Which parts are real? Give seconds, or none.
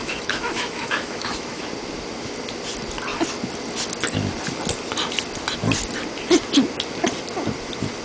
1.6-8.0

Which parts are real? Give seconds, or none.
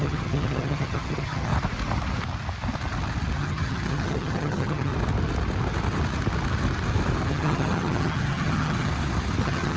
1.5-3.4; 4.9-7.3; 8.9-9.4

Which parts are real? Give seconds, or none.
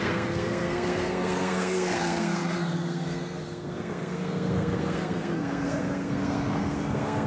none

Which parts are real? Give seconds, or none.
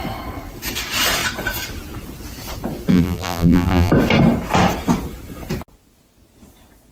0.0-2.9; 3.9-6.9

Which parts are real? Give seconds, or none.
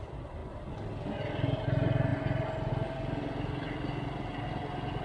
0.0-5.0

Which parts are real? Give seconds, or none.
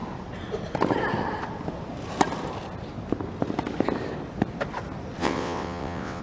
0.0-5.2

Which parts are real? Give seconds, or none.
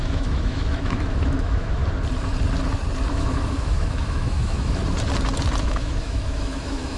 1.8-3.1; 4.8-5.6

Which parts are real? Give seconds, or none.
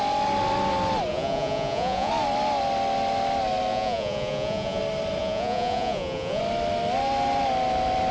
0.0-1.1; 2.1-3.7; 4.8-5.2; 6.4-8.1